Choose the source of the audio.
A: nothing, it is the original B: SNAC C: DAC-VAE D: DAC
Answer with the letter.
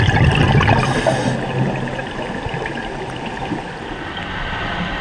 A